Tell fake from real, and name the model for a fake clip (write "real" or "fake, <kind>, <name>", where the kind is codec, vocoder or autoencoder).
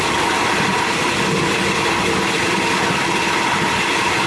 real